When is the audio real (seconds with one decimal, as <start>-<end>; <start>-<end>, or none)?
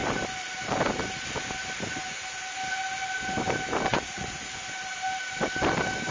0.0-3.9; 4.5-6.1